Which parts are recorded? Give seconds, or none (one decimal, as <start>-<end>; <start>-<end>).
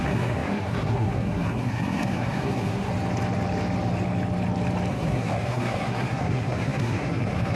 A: 2.9-4.9